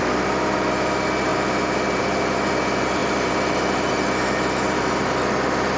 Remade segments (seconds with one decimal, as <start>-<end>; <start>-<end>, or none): none